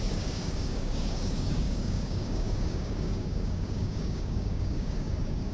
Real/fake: fake